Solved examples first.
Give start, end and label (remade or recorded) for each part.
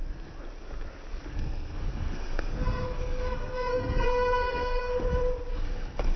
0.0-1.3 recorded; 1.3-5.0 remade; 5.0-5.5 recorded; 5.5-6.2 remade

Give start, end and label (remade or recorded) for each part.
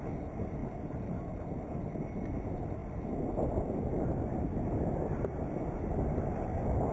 0.0-6.9 recorded